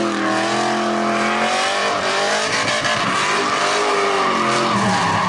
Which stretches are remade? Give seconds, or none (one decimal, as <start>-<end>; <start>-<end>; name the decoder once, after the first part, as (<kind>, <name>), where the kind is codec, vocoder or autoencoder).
1.8-2.3 (vocoder, BigVGAN v2)